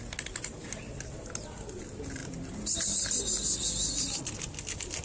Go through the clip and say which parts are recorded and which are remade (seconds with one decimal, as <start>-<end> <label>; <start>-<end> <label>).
0.0-5.0 recorded